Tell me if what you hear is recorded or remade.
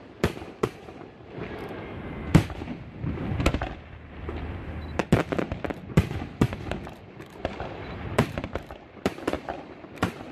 remade